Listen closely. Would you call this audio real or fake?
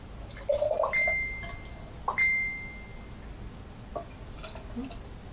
real